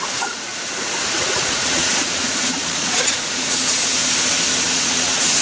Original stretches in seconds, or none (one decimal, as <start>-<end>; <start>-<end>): 0.5-1.1; 4.0-4.7